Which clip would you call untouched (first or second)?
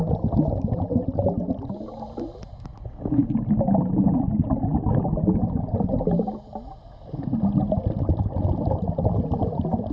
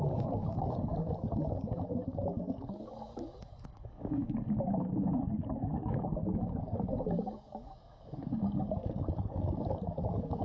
first